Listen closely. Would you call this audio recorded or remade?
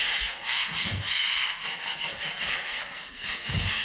remade